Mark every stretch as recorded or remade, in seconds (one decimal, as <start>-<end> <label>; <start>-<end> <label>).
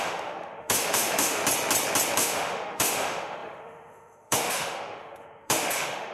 0.0-1.4 remade; 1.4-2.1 recorded; 2.1-6.1 remade